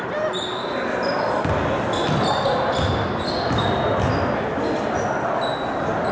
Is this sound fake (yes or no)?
no